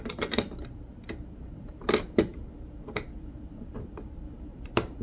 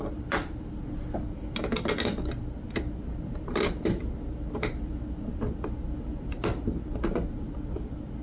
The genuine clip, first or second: second